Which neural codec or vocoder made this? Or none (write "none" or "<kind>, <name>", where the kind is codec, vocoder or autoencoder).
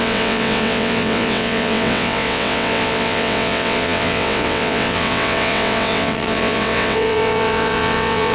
vocoder, WaveNeXt